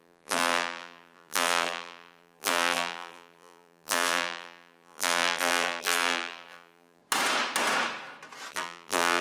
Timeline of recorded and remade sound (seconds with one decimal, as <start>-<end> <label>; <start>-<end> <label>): 0.0-7.0 remade; 7.0-8.5 recorded; 8.5-9.2 remade